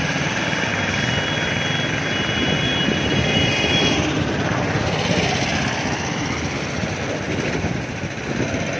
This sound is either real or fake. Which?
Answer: real